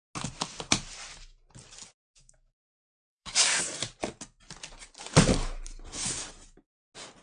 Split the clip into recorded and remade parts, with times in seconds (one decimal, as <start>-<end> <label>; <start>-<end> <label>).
0.0-2.0 recorded; 2.0-3.6 remade; 3.6-7.2 recorded